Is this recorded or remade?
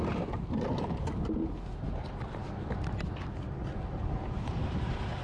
recorded